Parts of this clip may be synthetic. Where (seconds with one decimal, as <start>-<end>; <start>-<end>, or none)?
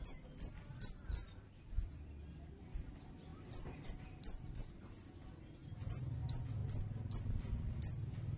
1.2-2.6; 3.3-4.5; 6.6-7.2